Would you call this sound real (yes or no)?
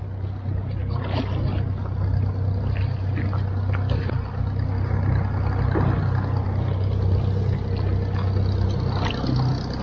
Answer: yes